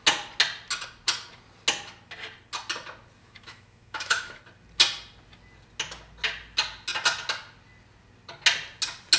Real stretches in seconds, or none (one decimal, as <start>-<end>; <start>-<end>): 0.0-3.2; 4.4-9.2